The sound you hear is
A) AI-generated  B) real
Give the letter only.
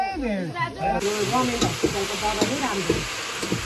B